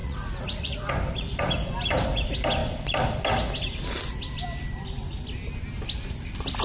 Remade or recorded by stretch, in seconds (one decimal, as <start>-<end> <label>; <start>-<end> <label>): 0.0-0.9 remade; 0.9-6.6 recorded